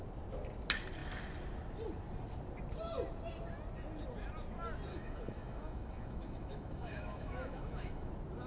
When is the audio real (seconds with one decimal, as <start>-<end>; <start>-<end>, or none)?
0.0-4.9; 8.1-8.5